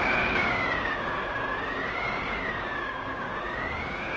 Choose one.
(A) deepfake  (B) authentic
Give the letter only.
A